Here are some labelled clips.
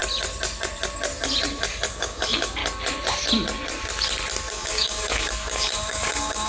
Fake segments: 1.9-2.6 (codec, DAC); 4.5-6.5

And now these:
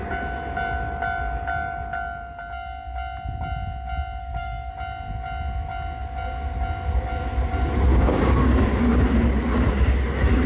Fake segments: 4.2-4.7 (codec, DAC); 7.9-9.0